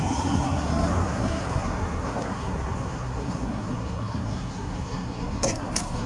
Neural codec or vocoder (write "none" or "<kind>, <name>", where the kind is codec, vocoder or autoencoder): codec, SNAC